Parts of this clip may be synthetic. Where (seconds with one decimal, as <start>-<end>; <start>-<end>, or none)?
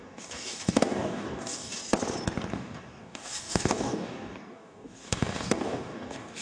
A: 0.0-1.8; 2.5-6.4